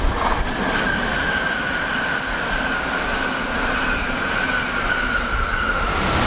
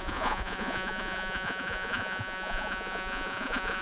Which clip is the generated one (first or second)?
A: second